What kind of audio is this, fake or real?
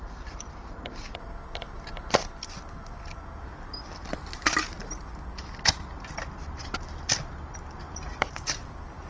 real